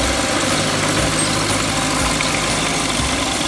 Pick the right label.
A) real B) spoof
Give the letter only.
A